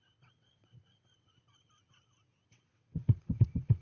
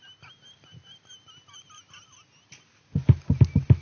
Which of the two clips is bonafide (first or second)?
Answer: second